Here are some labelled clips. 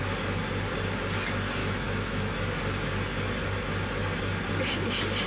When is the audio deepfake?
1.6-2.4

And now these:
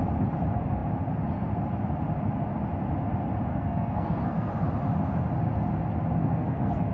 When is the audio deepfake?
3.5-4.5; 6.2-6.9

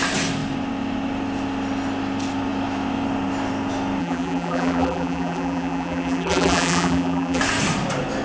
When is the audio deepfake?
4.0-7.4

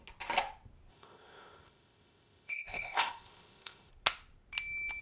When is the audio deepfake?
0.9-3.9

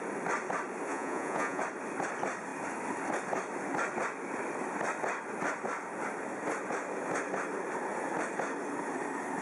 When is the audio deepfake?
0.9-1.6

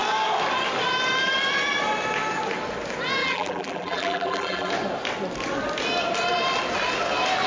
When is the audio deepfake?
3.2-4.7

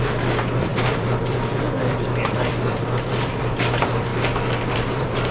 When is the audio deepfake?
0.0-4.1; 4.7-5.3

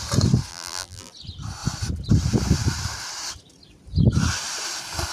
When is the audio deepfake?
0.5-1.1